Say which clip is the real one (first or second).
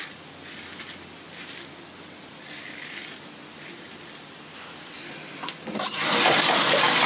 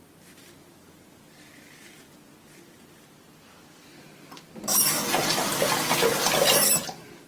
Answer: second